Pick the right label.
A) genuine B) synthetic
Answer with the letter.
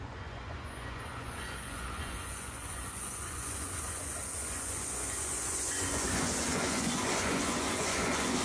B